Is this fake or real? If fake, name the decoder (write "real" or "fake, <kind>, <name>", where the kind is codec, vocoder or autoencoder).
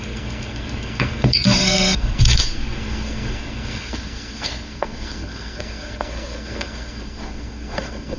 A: fake, codec, SNAC